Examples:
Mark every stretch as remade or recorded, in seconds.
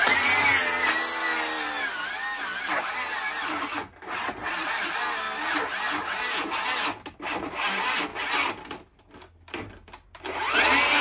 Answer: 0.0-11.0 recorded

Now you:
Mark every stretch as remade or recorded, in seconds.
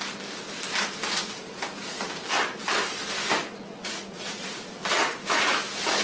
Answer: 0.0-3.4 recorded; 3.4-4.6 remade; 4.6-5.0 recorded; 5.0-5.6 remade; 5.6-6.0 recorded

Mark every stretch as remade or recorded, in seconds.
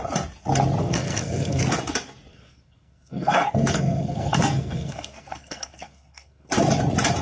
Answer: 0.0-0.8 recorded; 0.8-1.6 remade; 1.6-2.3 recorded; 2.3-6.5 remade; 6.5-7.2 recorded